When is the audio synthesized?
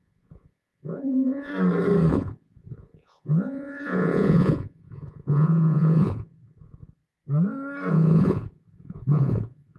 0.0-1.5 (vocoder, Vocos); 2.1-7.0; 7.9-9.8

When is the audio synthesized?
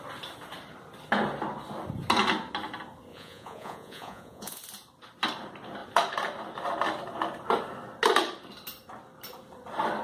3.1-4.6 (vocoder, Vocos)